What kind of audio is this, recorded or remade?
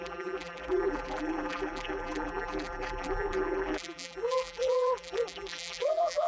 remade